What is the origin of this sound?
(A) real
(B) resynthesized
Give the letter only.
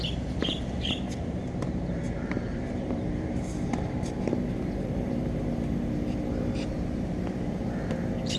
B